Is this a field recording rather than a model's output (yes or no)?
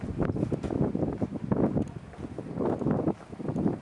yes